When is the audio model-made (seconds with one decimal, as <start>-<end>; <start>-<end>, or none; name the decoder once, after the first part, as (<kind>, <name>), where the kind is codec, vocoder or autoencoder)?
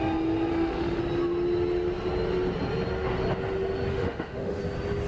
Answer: 0.5-1.0 (autoencoder, DAC-VAE); 3.9-4.6